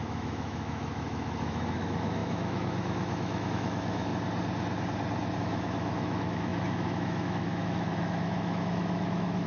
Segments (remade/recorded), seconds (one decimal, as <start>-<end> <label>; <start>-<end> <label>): 0.0-4.1 remade; 4.1-5.4 recorded; 5.4-9.5 remade